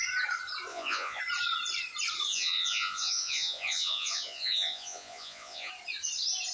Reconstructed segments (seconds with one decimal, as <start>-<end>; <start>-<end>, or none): 0.7-1.2; 2.3-5.7